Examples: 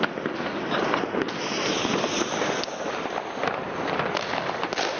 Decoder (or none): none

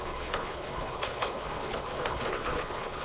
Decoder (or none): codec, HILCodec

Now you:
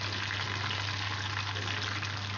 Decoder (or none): none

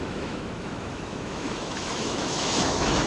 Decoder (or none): autoencoder, DAC-VAE